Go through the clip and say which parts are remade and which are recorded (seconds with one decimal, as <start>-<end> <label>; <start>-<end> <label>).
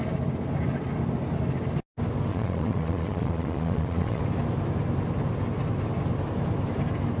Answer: 0.0-2.3 recorded; 2.3-4.2 remade; 4.2-7.2 recorded